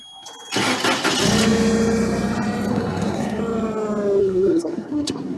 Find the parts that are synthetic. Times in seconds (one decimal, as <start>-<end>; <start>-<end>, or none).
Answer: 2.7-3.4; 4.2-5.4